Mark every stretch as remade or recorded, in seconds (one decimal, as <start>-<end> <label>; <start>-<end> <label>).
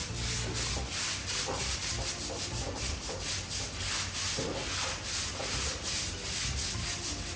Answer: 0.0-7.4 recorded